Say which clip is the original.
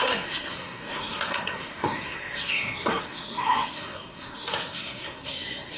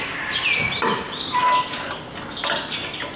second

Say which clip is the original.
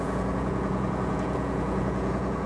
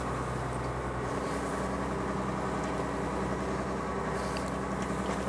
second